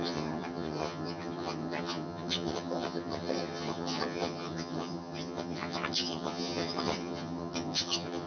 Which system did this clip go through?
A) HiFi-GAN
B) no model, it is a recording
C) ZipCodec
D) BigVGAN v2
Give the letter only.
A